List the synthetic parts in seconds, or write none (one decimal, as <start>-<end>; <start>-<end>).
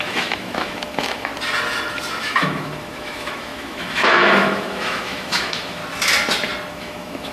0.0-1.3; 2.2-5.8; 6.7-7.3